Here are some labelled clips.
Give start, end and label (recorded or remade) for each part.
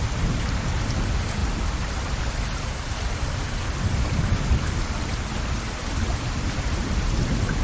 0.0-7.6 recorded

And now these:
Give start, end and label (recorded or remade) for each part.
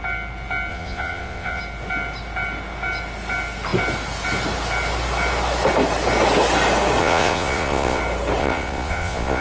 0.0-0.7 recorded; 0.7-1.6 remade; 1.6-7.0 recorded; 7.0-8.0 remade; 8.0-8.4 recorded; 8.4-9.4 remade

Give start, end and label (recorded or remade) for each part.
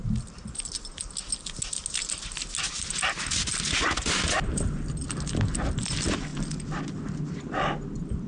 0.0-8.3 recorded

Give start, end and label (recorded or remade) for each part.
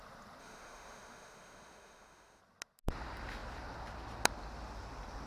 0.0-0.4 recorded; 0.4-2.4 remade; 2.4-5.3 recorded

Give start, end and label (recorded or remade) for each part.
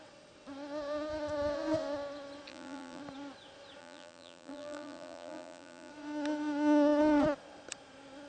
0.0-2.5 recorded; 2.5-3.0 remade; 3.0-3.8 recorded; 3.8-5.9 remade; 5.9-8.3 recorded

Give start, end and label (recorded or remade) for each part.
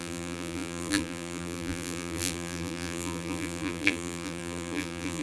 0.0-5.2 remade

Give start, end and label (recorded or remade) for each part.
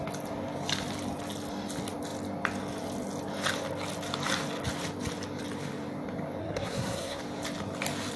0.0-6.4 recorded; 6.4-7.2 remade; 7.2-8.2 recorded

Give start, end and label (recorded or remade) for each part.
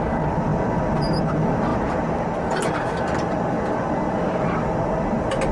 0.0-5.5 recorded